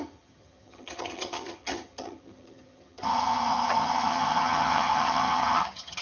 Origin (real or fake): fake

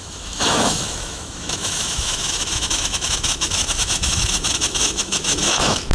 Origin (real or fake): fake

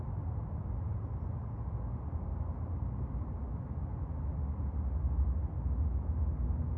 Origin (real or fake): real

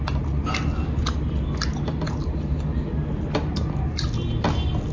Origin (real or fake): real